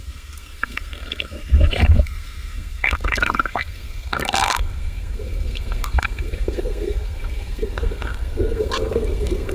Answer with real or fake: fake